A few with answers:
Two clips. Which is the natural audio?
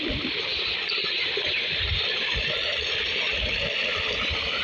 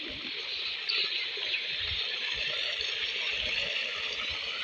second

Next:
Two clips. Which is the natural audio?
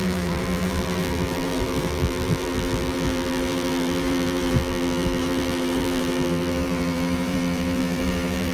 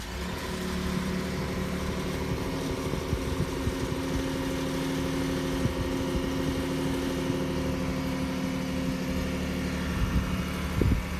second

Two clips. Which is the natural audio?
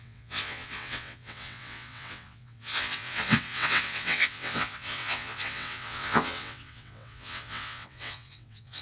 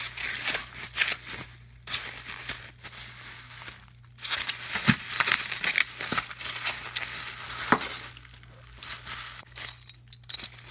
second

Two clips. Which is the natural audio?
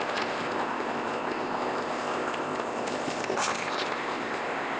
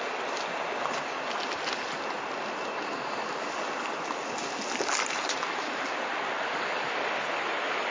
second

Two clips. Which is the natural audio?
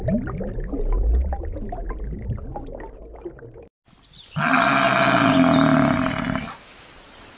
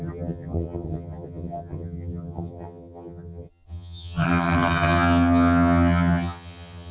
first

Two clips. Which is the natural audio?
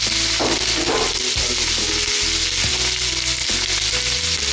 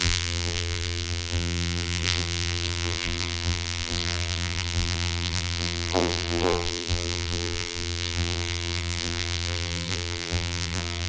first